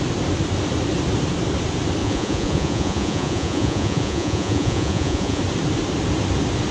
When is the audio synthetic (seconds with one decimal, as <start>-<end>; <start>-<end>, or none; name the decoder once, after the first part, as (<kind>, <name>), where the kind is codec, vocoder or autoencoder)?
2.0-5.4 (vocoder, Vocos)